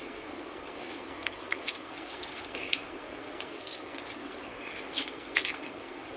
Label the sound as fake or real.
fake